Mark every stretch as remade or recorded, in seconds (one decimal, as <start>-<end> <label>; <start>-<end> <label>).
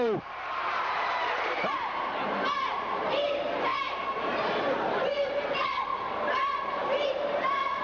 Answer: 0.0-3.7 remade; 3.7-4.2 recorded; 4.2-5.9 remade; 5.9-7.8 recorded